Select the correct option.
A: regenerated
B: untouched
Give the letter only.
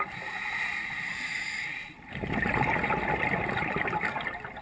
B